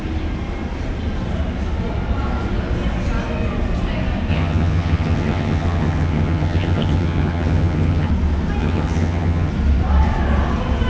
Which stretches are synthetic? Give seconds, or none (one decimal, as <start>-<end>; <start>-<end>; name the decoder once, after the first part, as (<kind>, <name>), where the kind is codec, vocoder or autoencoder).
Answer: 4.3-8.1 (vocoder, HiFi-GAN); 8.6-9.5